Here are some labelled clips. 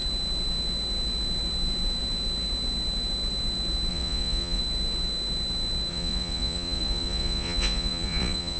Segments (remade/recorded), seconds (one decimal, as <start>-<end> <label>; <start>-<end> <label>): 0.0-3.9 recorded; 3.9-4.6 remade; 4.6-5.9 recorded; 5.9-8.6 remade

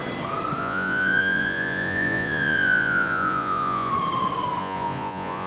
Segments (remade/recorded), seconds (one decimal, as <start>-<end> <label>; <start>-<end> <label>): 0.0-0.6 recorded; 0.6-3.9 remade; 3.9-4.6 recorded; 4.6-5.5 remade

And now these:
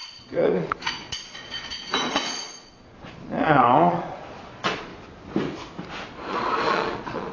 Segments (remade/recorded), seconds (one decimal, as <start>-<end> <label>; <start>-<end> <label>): 0.0-4.9 remade; 4.9-6.3 recorded; 6.3-7.3 remade

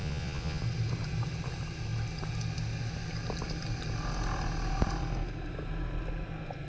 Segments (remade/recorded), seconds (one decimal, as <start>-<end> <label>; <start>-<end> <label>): 0.0-0.6 remade; 0.6-6.7 recorded